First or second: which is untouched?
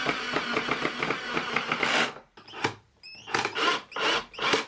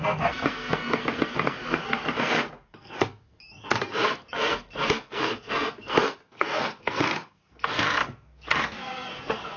first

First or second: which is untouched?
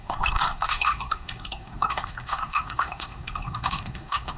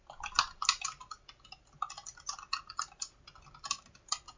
second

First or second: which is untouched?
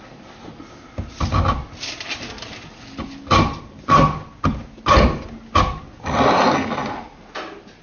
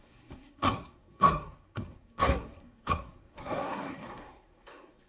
first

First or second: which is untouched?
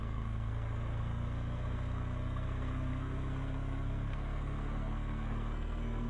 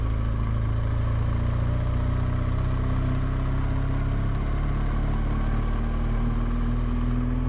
second